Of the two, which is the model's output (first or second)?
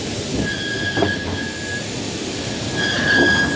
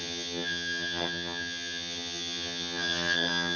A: second